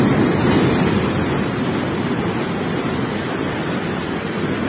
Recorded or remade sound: recorded